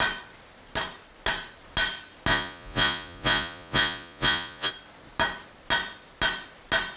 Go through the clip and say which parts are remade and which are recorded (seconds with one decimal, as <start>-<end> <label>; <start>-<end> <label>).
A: 0.0-2.3 recorded; 2.3-4.7 remade; 4.7-7.0 recorded